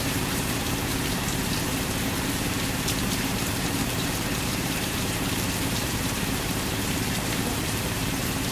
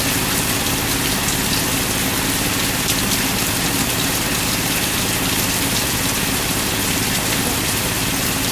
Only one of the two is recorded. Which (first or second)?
second